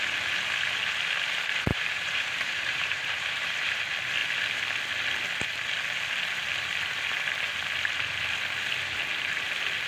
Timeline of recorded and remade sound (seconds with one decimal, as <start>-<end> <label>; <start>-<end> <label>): 0.0-1.7 recorded; 1.7-3.8 remade; 3.8-9.9 recorded